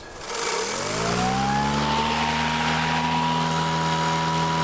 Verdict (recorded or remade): recorded